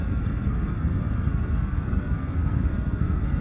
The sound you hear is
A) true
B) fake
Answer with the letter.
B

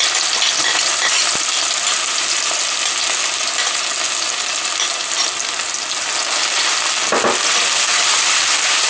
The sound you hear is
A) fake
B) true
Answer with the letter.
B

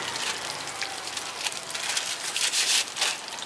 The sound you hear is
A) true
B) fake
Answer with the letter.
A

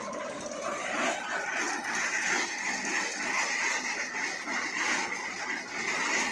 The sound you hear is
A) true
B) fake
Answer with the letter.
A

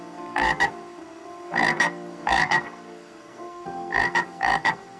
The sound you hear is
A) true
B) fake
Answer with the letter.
B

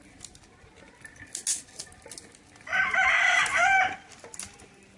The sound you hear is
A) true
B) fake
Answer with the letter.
A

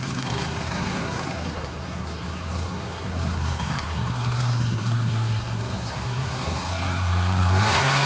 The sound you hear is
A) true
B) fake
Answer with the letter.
B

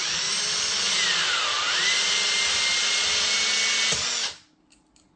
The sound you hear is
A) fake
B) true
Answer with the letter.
B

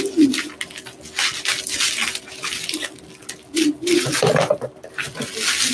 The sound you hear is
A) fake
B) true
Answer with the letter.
B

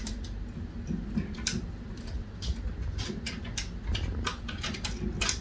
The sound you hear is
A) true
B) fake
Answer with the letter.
A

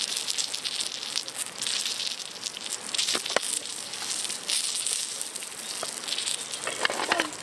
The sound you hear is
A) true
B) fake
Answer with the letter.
A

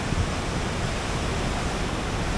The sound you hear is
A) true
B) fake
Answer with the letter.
A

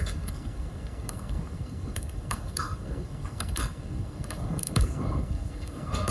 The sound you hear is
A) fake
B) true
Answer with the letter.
A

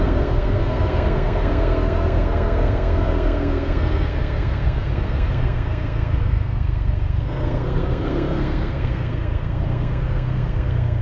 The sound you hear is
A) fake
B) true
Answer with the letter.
A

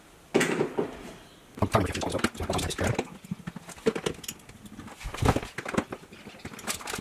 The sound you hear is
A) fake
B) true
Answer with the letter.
B